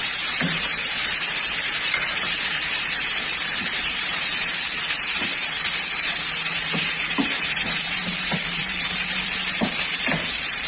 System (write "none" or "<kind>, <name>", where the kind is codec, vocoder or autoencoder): vocoder, BigVGAN v2